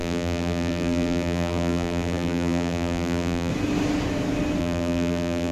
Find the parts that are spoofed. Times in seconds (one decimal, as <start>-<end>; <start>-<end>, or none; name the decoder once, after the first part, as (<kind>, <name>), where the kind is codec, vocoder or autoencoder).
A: 0.0-3.5 (vocoder, BigVGAN v2); 4.6-5.5